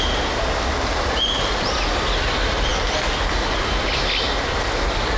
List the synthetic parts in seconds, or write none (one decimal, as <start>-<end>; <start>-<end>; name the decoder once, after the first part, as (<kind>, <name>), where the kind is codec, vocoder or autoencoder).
none